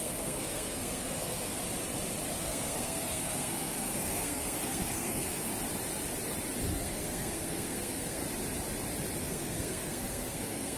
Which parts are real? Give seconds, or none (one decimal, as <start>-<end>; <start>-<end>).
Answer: 1.6-2.4; 5.5-6.6; 8.2-9.2